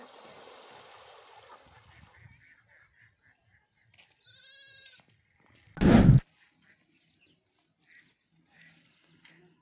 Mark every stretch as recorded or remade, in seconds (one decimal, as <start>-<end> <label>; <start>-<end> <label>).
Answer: 0.0-9.6 recorded